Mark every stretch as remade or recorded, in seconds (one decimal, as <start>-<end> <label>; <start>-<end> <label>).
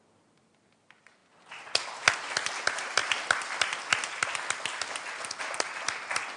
0.0-6.4 recorded